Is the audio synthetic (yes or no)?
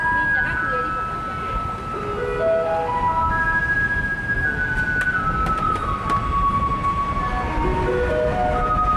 no